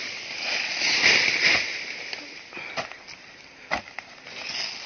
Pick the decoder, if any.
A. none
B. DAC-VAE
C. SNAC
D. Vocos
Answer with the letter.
A